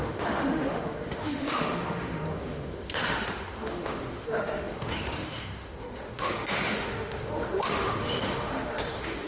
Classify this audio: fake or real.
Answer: fake